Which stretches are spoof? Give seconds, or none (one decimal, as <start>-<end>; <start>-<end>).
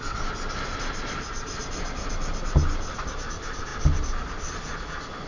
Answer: none